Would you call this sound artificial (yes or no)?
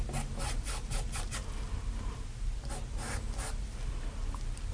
no